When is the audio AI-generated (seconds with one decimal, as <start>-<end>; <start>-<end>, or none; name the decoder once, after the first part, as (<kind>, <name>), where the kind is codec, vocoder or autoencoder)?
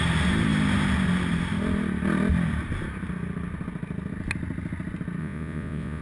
5.2-6.0 (vocoder, Vocos)